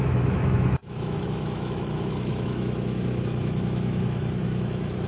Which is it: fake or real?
fake